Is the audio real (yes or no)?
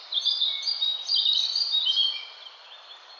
yes